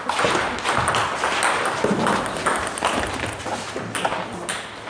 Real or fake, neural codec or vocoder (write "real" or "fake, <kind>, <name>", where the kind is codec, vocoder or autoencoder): real